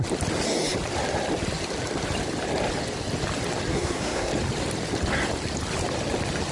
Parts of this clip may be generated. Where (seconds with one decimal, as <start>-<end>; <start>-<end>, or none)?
3.7-4.3